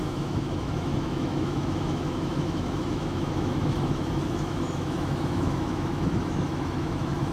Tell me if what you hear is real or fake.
fake